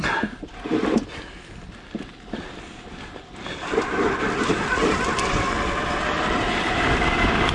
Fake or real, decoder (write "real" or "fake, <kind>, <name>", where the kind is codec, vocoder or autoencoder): real